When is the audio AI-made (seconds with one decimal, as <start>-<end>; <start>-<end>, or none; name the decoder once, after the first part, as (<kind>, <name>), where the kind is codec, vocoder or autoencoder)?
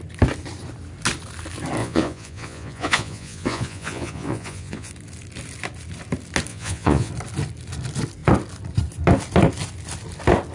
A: 1.8-4.9 (vocoder, Vocos); 6.5-7.1